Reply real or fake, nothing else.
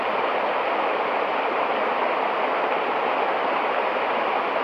real